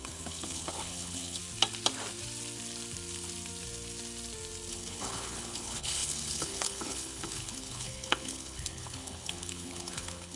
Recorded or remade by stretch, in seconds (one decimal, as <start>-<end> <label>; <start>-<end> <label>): 0.0-1.4 remade; 1.4-4.7 recorded; 4.7-10.4 remade